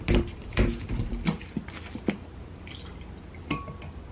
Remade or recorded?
recorded